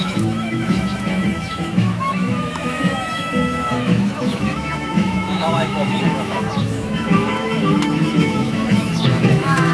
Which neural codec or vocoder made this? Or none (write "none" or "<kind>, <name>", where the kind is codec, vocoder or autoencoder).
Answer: autoencoder, DAC-VAE